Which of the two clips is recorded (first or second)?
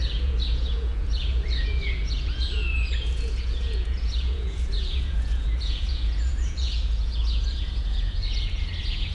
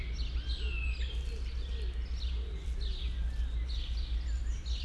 second